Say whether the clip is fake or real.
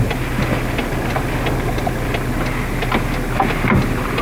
real